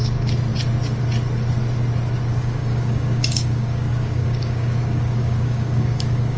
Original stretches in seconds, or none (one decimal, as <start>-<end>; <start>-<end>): 0.0-2.3